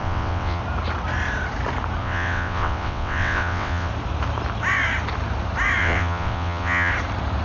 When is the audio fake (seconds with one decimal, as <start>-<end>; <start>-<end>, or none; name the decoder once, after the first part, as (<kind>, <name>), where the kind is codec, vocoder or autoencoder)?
0.0-0.6 (vocoder, WaveNeXt); 2.0-3.9; 5.8-6.9